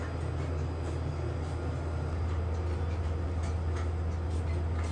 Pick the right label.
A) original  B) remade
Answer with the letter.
A